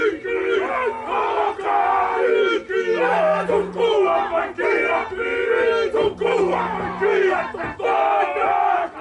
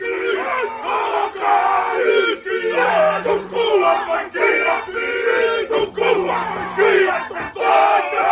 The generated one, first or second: second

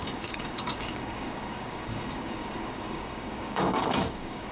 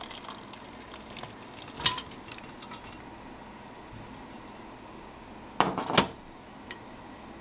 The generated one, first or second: first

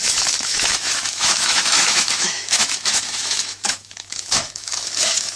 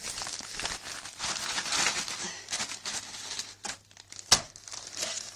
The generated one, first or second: first